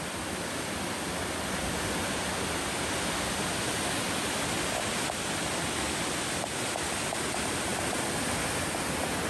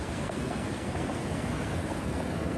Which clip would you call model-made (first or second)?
second